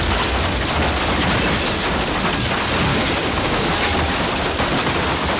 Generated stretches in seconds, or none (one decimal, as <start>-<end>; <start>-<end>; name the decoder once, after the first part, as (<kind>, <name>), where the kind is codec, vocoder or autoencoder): 2.9-3.6 (codec, DAC)